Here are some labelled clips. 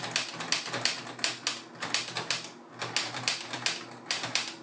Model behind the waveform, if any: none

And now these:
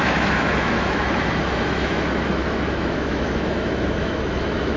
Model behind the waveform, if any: autoencoder, DAC-VAE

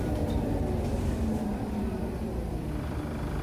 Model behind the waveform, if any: vocoder, BigVGAN v2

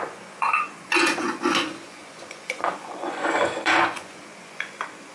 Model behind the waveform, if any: vocoder, Vocos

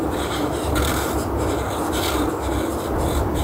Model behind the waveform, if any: vocoder, BigVGAN v2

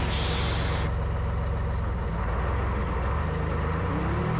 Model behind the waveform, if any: none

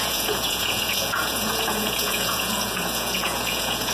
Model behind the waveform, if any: vocoder, Vocos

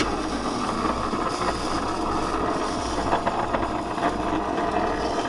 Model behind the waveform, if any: none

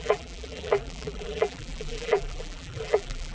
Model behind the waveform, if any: vocoder, BigVGAN v2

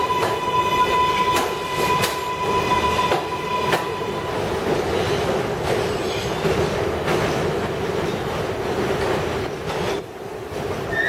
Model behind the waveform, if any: none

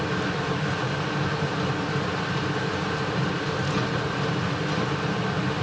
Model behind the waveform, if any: none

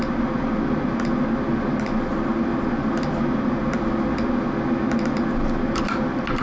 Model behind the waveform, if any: none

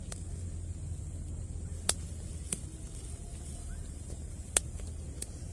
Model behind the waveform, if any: none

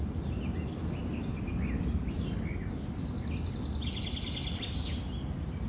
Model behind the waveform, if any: none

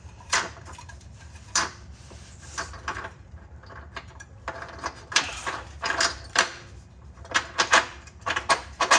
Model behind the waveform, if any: vocoder, BigVGAN v2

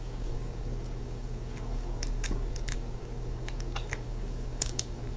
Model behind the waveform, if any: codec, DAC